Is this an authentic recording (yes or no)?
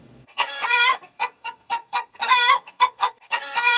no